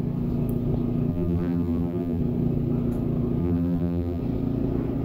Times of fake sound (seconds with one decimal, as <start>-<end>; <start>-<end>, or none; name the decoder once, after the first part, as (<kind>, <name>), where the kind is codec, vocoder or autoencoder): 1.1-2.2 (vocoder, BigVGAN v2); 3.4-4.2